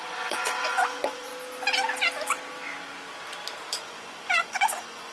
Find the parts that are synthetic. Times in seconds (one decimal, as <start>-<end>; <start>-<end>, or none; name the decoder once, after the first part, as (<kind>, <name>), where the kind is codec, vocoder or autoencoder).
0.0-1.3 (vocoder, Vocos); 3.8-5.1